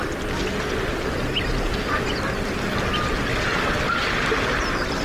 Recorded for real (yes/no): yes